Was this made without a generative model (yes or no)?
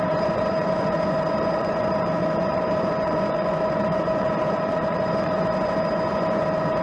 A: no